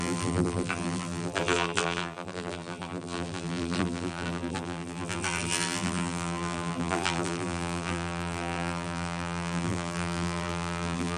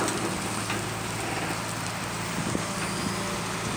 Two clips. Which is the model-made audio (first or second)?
first